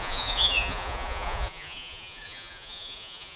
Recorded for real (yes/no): no